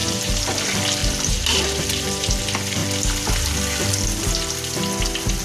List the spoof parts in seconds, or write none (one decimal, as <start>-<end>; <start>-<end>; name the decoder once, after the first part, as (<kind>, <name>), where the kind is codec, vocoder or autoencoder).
0.0-0.6 (vocoder, BigVGAN v2); 1.0-2.4

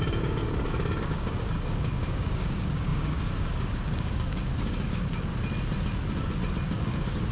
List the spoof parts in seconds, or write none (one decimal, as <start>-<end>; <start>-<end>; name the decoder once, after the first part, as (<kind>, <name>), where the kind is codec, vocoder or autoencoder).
0.0-5.3 (codec, DAC); 6.7-7.3

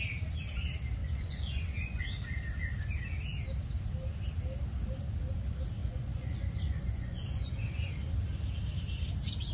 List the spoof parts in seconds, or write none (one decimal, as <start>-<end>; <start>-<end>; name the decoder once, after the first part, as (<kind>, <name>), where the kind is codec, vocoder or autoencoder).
1.0-2.0 (vocoder, Vocos); 5.8-7.9

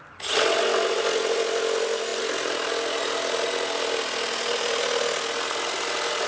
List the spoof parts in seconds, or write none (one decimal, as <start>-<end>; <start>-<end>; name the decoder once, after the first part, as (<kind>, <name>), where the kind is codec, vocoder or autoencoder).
none

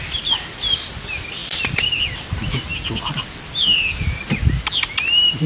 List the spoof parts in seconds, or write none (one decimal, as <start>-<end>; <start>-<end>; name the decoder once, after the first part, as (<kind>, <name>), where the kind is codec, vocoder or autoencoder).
none

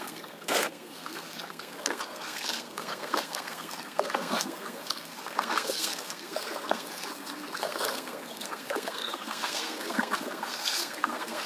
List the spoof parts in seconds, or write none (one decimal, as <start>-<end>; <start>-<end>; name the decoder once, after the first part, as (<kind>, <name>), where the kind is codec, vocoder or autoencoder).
0.0-11.5 (codec, SNAC)

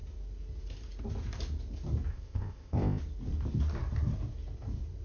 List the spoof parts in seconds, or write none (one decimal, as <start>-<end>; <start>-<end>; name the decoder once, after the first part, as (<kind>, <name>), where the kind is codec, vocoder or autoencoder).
2.1-3.0 (codec, ZipCodec)